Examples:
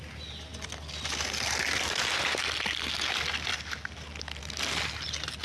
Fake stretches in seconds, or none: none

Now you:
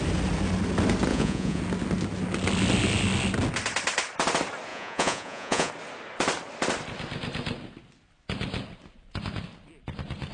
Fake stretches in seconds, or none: 1.1-1.6 (vocoder, Vocos); 4.7-5.7

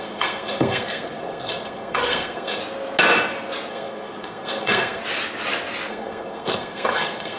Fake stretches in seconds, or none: 0.0-2.6 (codec, SNAC); 3.7-5.0; 5.9-7.4

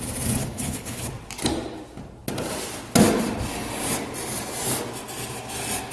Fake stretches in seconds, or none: 0.4-1.1 (codec, HILCodec)

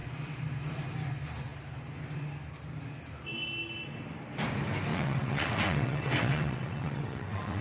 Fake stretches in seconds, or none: 4.9-7.6 (vocoder, WaveNeXt)

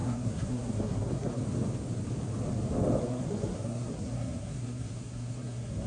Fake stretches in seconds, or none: 0.0-1.4 (codec, SNAC); 3.0-5.9

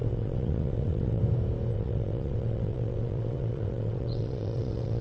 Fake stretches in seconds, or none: 0.0-1.2 (vocoder, WaveNeXt); 1.7-5.0

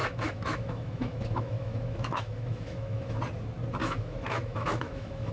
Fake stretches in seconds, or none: 0.0-3.2 (autoencoder, DAC-VAE); 3.8-5.3